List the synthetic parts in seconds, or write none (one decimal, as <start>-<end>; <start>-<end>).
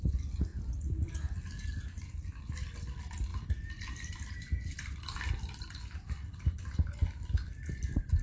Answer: none